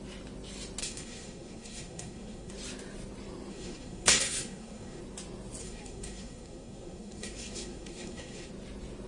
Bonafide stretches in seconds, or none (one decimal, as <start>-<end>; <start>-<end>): 0.0-0.8; 2.5-3.5; 5.0-5.6; 8.5-9.1